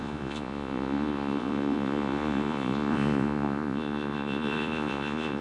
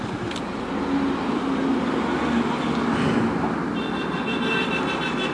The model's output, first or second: first